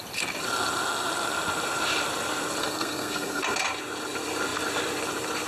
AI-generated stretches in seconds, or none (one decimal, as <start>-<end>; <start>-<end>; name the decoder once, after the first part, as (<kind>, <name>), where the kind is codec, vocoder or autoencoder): 2.6-3.4 (codec, SNAC)